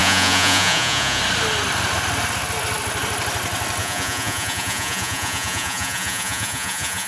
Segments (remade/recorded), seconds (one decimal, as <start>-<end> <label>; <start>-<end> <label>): 0.0-1.2 remade; 1.2-3.8 recorded; 3.8-7.1 remade